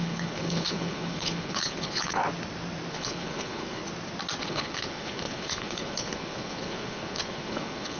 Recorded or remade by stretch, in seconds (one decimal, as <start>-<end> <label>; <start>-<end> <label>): 0.0-2.2 remade; 2.2-2.9 recorded; 2.9-3.8 remade; 3.8-4.4 recorded; 4.4-8.0 remade